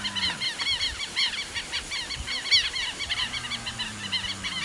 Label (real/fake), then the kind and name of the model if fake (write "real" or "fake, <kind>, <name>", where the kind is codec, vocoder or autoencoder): real